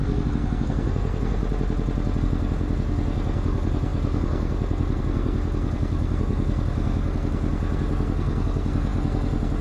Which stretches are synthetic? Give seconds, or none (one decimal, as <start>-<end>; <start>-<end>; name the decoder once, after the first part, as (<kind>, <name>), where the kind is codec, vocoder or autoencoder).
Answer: 0.0-1.4 (codec, SNAC); 2.2-9.6